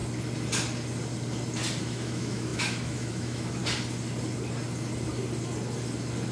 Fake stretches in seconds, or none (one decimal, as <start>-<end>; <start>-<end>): 1.8-3.6